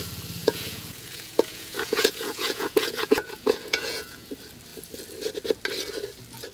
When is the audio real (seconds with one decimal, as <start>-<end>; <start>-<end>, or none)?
0.0-0.4; 4.3-6.5